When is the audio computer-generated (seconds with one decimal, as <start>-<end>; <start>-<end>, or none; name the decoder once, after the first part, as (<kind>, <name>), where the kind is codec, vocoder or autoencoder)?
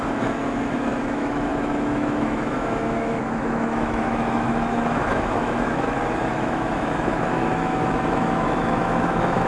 0.0-9.5 (autoencoder, DAC-VAE)